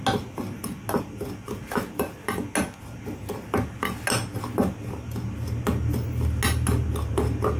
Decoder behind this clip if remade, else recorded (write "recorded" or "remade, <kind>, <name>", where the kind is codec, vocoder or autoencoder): recorded